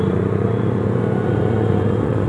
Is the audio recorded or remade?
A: remade